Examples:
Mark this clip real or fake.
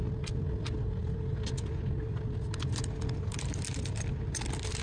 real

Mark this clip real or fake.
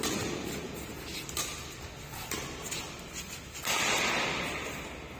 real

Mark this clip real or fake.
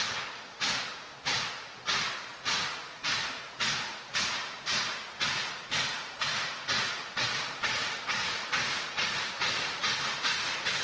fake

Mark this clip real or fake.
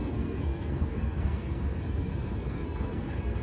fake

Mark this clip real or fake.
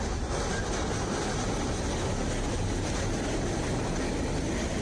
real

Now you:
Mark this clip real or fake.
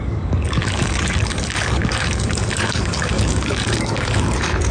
fake